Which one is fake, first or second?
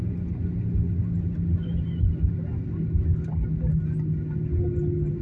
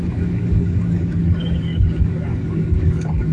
second